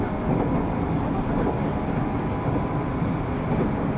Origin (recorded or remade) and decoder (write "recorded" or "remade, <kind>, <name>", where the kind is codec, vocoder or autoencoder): recorded